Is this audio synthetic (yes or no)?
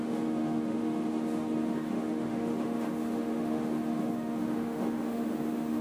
yes